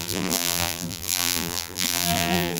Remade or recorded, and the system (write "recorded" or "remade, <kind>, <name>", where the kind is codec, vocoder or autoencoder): remade, vocoder, BigVGAN v2